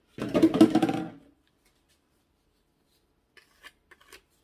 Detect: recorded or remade recorded